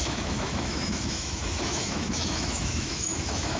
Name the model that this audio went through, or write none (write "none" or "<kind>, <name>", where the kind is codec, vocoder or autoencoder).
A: autoencoder, DAC-VAE